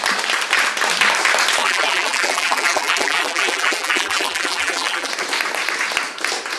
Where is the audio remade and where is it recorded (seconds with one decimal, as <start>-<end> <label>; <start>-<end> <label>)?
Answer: 0.0-1.6 recorded; 1.6-5.1 remade; 5.1-6.6 recorded